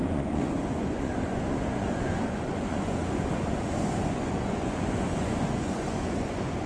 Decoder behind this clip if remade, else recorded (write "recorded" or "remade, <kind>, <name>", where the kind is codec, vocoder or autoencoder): remade, vocoder, Vocos